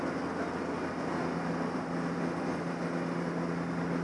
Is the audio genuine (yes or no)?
yes